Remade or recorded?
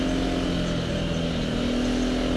recorded